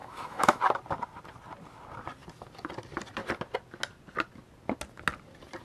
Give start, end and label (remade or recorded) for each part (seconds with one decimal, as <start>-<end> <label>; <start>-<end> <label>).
0.0-0.6 remade; 0.6-5.6 recorded